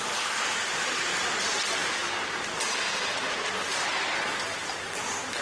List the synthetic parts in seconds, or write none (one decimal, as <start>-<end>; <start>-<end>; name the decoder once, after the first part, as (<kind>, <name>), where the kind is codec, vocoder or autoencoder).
none